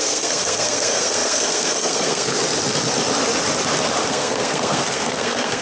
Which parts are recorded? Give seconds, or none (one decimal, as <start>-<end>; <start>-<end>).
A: 2.3-4.1